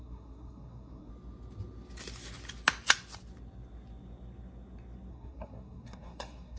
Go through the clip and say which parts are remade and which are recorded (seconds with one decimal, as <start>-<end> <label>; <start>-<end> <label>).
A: 0.0-1.1 remade; 1.1-5.1 recorded; 5.1-6.6 remade